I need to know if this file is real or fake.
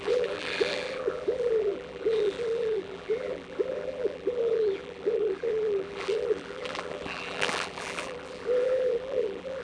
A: fake